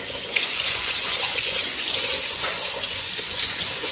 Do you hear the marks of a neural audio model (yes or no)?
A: yes